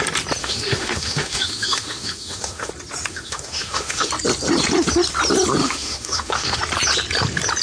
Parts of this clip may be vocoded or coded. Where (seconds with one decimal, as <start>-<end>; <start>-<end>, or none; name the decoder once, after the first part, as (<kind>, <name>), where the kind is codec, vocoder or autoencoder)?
0.4-2.7 (autoencoder, DAC-VAE); 3.1-4.1; 5.6-6.6